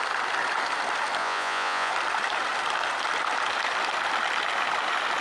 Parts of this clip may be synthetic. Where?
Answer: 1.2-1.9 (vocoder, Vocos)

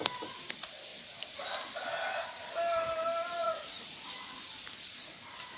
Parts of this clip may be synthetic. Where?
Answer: 3.4-4.0 (vocoder, Vocos)

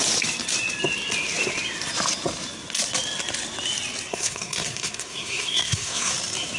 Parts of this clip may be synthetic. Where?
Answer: 4.1-6.1 (codec, SNAC)

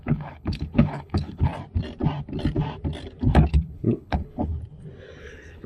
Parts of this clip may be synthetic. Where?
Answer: 0.0-1.5 (codec, HILCodec); 3.5-4.5; 5.2-5.7

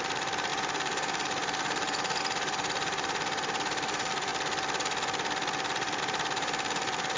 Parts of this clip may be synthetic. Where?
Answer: 0.0-4.3 (vocoder, BigVGAN v2); 6.0-7.2